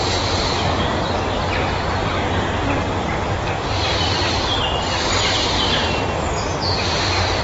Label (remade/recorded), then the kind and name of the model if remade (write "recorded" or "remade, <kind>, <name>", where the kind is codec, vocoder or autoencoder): recorded